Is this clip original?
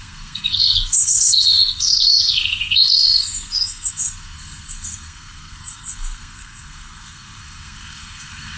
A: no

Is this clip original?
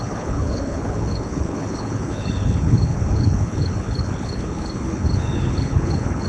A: no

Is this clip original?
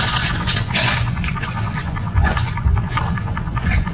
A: no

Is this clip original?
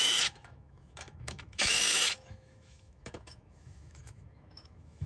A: no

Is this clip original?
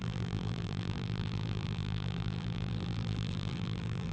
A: no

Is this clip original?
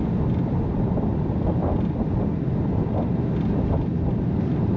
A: yes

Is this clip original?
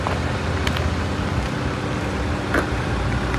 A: yes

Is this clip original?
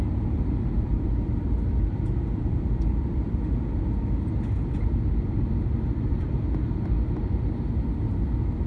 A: yes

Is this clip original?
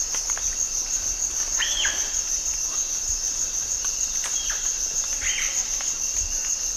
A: yes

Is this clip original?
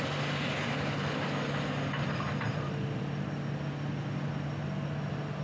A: yes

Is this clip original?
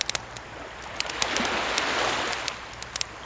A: yes